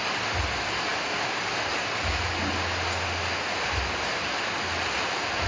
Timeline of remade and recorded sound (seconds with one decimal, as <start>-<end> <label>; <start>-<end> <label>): 0.0-5.5 recorded